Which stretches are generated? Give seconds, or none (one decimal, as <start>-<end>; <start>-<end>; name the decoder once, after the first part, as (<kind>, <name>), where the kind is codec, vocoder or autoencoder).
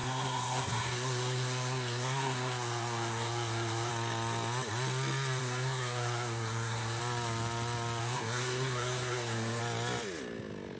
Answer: 0.0-3.9 (codec, SNAC); 5.4-7.0; 8.0-9.6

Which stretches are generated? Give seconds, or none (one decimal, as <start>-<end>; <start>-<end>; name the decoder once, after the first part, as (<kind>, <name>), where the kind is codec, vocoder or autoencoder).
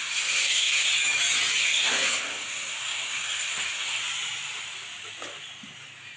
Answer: 0.0-0.9 (codec, SNAC); 1.6-4.0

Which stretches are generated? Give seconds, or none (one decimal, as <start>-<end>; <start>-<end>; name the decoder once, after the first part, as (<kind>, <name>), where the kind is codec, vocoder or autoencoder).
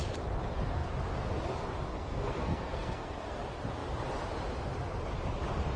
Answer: 1.9-3.4 (codec, SNAC)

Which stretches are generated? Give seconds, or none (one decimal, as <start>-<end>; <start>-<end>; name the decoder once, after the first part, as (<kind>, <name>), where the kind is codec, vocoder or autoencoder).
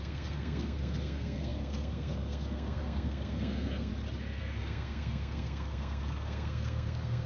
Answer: 0.0-3.9 (codec, SNAC); 4.4-7.3